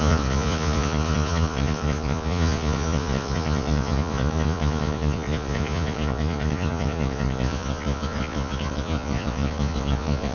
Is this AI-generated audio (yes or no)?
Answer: yes